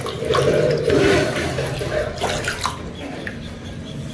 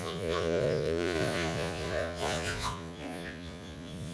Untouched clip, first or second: first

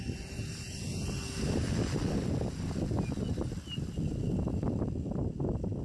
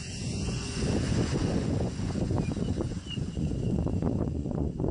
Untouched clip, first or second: first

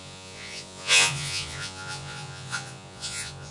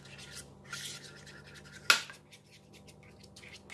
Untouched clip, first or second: second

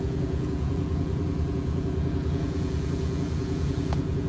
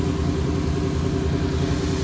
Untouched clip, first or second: second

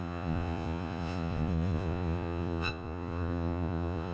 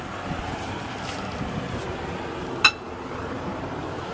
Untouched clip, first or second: second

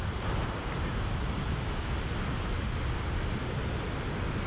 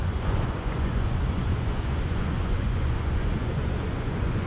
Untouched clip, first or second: first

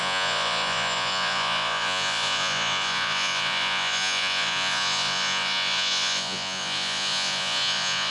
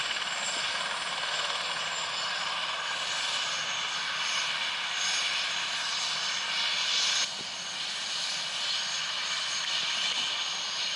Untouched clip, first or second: second